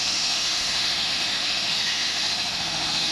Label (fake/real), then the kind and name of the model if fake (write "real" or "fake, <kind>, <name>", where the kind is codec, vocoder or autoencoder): fake, autoencoder, DAC-VAE